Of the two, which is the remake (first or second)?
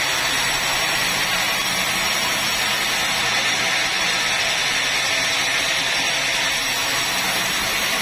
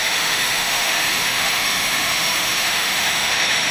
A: second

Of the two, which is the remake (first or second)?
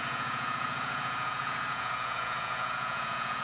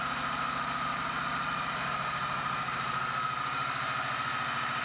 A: first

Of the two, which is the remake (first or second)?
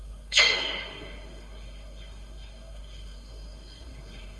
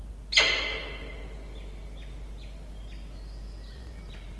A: first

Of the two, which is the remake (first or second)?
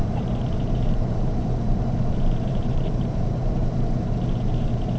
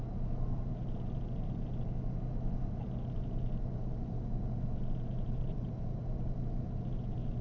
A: first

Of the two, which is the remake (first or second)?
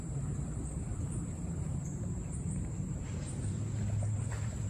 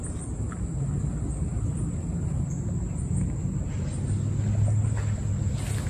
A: first